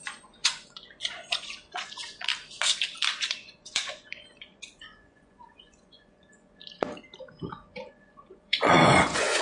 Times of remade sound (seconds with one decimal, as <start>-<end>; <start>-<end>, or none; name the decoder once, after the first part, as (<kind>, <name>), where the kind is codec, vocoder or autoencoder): 0.0-2.3 (vocoder, Vocos); 3.2-6.6; 7.5-9.4